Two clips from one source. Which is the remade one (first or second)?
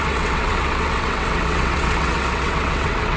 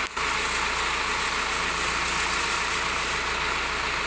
first